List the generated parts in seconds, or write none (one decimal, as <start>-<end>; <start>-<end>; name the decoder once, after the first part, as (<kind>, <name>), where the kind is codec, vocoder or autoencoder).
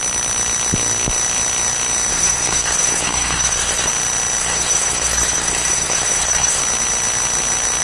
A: 2.1-3.9 (codec, SNAC); 4.4-6.6